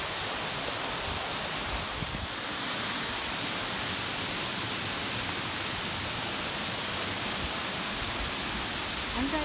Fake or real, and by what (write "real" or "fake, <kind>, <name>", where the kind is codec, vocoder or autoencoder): real